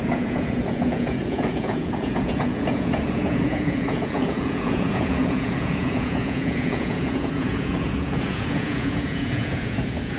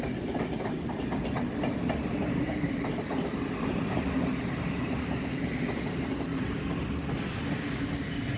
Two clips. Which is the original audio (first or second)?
second